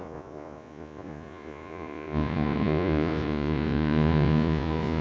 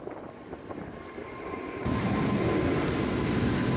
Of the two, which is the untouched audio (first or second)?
second